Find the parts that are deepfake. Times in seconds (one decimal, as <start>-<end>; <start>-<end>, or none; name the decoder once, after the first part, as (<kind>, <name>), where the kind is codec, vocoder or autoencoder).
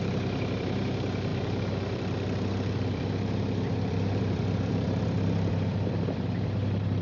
0.0-7.0 (vocoder, BigVGAN v2)